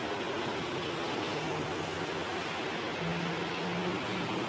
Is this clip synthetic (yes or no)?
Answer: no